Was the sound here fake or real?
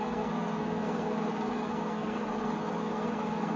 fake